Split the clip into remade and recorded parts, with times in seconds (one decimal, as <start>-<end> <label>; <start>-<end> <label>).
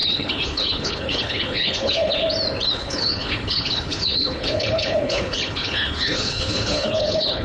0.0-2.2 remade; 2.2-2.7 recorded; 2.7-7.4 remade